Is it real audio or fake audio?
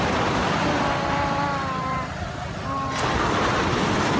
real